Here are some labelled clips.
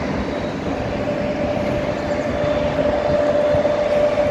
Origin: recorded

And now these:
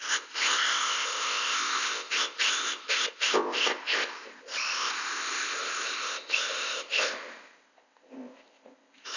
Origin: remade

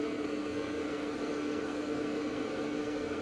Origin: remade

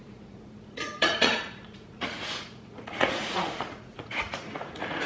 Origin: remade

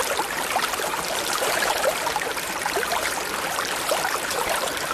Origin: remade